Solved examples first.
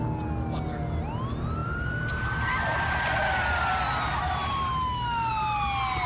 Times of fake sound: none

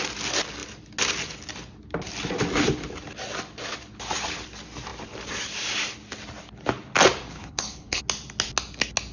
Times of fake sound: 7.3-8.0 (codec, HILCodec)

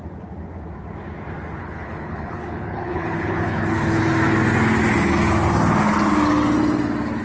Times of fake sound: 1.6-4.0 (codec, HILCodec)

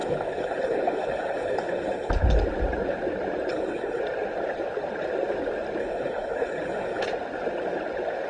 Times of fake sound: 0.0-2.1 (codec, HILCodec); 3.5-4.0; 5.8-7.0

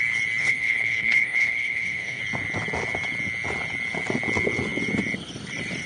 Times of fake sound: 0.4-2.2 (codec, HILCodec)

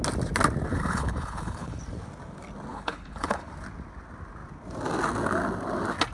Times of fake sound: 0.7-1.8 (codec, HILCodec); 2.7-3.5

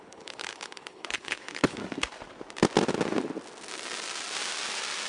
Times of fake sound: 0.0-1.8 (codec, HILCodec)